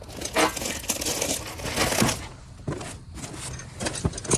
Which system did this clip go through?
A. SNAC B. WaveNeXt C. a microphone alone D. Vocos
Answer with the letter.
C